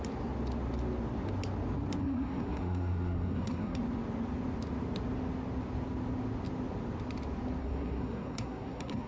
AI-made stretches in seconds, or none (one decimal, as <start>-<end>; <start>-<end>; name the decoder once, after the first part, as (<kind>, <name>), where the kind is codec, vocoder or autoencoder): 2.0-3.8 (codec, SNAC); 7.6-9.1